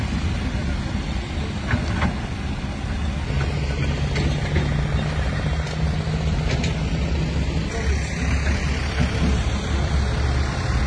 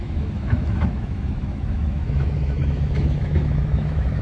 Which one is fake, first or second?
second